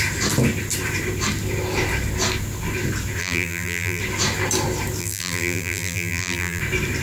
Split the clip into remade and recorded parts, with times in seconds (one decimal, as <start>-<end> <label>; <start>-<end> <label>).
0.0-3.2 recorded; 3.2-4.0 remade; 4.0-5.0 recorded; 5.0-6.6 remade; 6.6-7.0 recorded